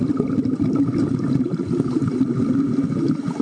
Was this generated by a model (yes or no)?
no